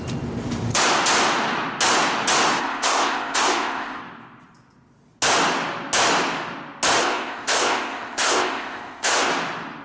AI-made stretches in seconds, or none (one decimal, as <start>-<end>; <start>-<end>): 2.6-4.0; 7.0-9.3